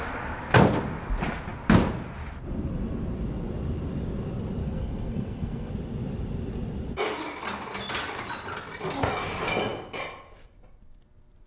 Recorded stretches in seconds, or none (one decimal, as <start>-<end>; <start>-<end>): 0.0-4.6; 5.7-11.5